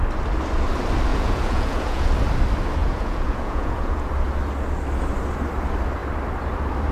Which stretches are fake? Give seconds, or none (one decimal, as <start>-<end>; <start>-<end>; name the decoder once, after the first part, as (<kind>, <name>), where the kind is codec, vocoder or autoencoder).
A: 1.1-2.1 (vocoder, Vocos); 2.8-4.1